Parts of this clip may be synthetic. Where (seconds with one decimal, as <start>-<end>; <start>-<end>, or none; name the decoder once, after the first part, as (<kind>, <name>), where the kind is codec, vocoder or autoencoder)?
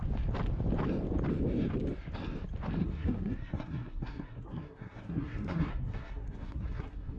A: 2.8-7.2 (codec, SNAC)